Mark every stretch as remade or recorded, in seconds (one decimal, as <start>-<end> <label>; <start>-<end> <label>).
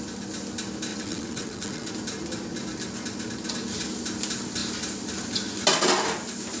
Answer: 0.0-0.9 recorded; 0.9-1.9 remade; 1.9-6.6 recorded